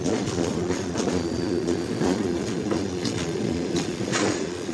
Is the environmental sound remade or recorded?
remade